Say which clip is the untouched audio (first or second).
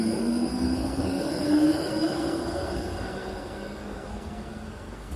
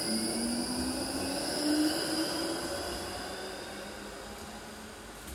second